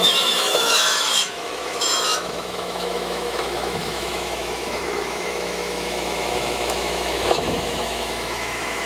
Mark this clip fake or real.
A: fake